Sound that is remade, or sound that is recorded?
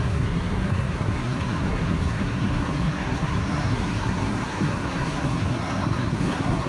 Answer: remade